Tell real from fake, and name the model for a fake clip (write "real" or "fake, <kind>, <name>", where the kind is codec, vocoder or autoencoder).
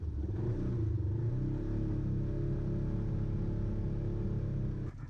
real